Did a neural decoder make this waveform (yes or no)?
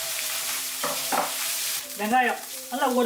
yes